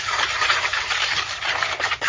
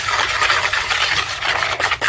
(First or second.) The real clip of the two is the second